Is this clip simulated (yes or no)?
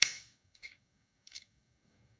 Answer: yes